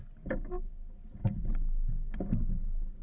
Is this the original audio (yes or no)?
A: yes